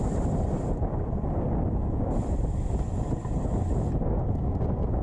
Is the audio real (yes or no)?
yes